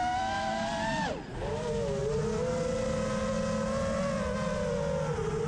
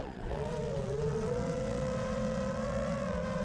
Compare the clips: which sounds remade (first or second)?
second